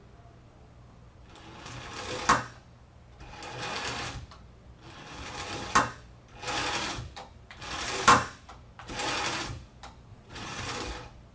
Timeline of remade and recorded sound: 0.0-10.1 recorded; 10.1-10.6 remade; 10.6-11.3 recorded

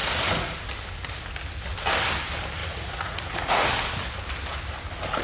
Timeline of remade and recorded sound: 0.0-0.7 remade; 0.7-2.6 recorded; 2.6-3.7 remade; 3.7-5.2 recorded

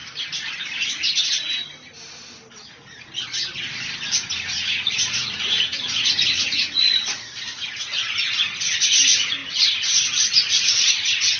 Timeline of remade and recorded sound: 0.0-4.3 recorded; 4.3-8.1 remade; 8.1-11.4 recorded